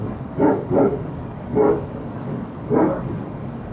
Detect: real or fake fake